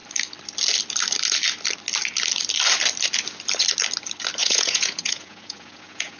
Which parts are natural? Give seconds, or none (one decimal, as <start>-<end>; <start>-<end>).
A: 0.0-4.4